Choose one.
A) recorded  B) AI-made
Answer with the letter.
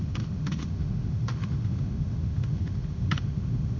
B